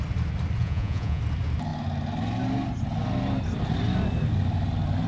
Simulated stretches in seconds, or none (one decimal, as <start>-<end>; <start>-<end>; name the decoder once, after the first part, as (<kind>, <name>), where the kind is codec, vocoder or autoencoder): 0.6-1.2 (vocoder, Vocos)